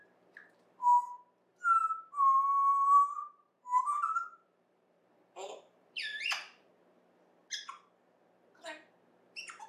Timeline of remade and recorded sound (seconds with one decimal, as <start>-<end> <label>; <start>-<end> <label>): 0.0-1.5 recorded; 1.5-6.7 remade; 6.7-9.7 recorded